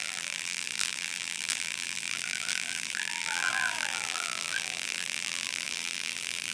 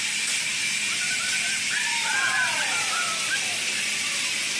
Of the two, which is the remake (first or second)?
first